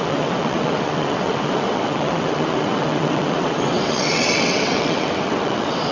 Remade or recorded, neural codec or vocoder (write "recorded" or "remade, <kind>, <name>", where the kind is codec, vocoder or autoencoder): remade, vocoder, WaveNeXt